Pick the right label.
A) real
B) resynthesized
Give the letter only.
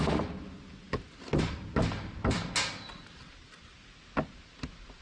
A